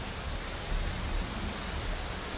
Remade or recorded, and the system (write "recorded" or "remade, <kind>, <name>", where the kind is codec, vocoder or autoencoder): recorded